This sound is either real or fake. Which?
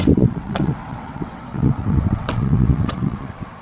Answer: fake